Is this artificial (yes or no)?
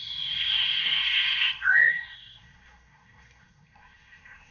yes